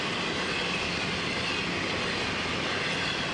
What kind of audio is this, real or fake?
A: real